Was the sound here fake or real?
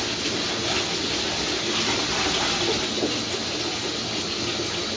real